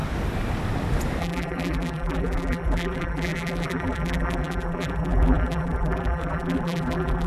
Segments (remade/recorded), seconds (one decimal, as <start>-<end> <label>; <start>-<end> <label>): 0.0-1.2 recorded; 1.2-7.3 remade